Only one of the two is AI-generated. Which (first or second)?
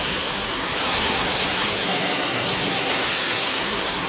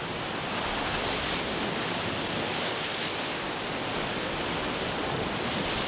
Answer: first